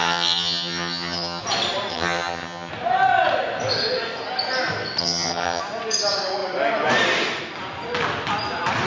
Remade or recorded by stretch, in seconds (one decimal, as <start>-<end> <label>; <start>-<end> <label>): 0.0-1.4 remade; 1.4-1.9 recorded; 1.9-2.7 remade; 2.7-5.0 recorded; 5.0-5.6 remade; 5.6-8.9 recorded